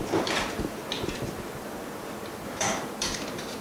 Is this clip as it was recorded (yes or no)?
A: no